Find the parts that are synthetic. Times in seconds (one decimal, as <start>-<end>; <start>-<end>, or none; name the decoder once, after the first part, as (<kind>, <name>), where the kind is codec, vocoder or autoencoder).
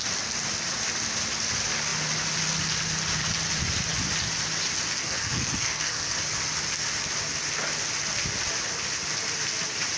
5.0-6.1 (codec, SNAC)